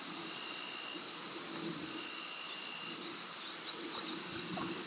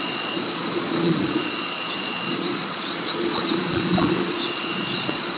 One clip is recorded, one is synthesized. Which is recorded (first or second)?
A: first